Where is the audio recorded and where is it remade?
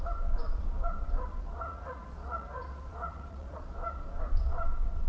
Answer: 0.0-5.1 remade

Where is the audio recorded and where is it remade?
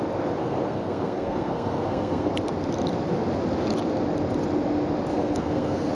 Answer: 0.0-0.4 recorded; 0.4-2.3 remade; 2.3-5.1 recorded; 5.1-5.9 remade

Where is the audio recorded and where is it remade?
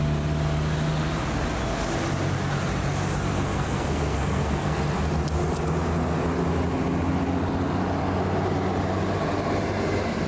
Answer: 0.0-3.3 recorded; 3.3-4.8 remade; 4.8-10.3 recorded